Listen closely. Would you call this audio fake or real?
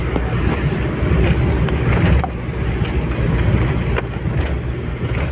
real